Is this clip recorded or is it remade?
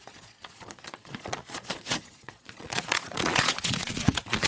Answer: remade